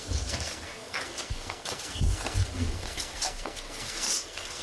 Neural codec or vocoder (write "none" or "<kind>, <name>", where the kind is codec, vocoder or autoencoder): codec, SNAC